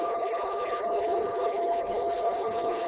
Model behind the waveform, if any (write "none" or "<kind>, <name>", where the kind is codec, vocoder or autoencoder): codec, HILCodec